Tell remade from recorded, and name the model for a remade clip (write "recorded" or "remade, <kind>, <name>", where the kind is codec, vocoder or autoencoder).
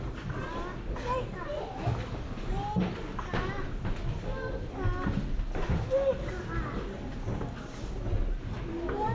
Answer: recorded